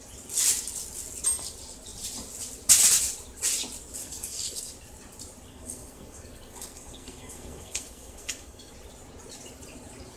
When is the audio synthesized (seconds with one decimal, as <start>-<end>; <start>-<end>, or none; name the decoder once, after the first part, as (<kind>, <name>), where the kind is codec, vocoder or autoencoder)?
4.0-4.7 (codec, SNAC); 5.5-8.7